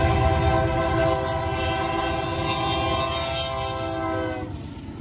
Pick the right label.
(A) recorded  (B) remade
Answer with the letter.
A